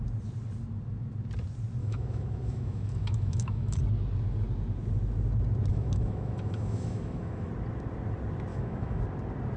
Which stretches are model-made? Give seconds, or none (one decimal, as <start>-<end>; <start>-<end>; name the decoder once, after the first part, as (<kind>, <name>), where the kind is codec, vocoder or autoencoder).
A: 1.8-3.8 (autoencoder, DAC-VAE); 5.7-7.5; 8.5-9.0